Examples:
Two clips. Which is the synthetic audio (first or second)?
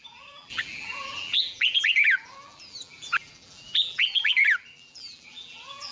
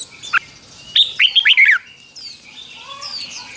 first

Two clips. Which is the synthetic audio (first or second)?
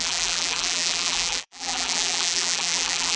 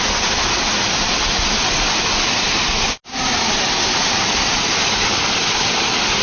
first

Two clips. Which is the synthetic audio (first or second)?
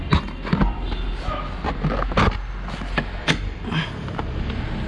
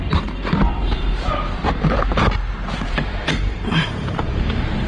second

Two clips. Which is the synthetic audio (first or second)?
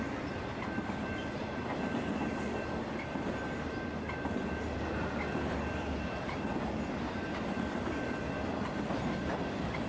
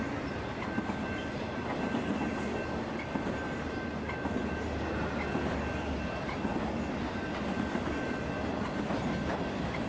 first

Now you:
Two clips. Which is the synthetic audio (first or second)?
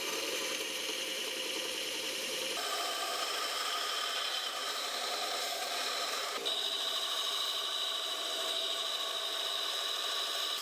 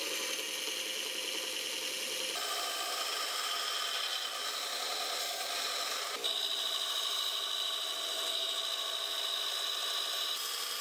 first